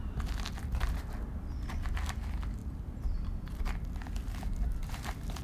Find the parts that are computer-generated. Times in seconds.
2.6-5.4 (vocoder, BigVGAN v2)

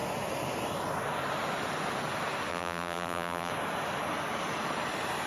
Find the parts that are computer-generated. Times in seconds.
2.5-3.5 (vocoder, BigVGAN v2)